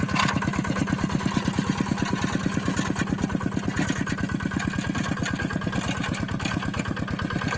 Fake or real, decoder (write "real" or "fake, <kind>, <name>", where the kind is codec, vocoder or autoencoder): real